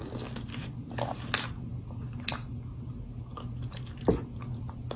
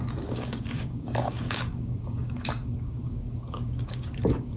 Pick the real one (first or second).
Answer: first